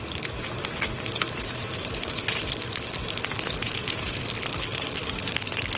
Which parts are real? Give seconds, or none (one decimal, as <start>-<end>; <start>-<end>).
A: 0.0-3.6; 4.2-5.8